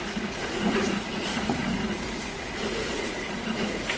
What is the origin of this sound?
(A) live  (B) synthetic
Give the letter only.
B